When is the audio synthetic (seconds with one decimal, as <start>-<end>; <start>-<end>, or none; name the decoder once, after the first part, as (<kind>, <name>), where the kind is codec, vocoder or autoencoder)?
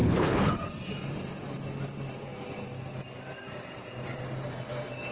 0.0-0.5 (codec, HILCodec)